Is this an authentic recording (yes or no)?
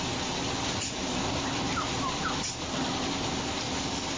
yes